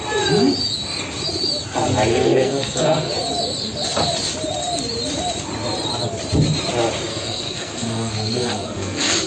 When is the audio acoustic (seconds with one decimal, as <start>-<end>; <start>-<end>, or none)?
0.0-2.1; 3.1-7.1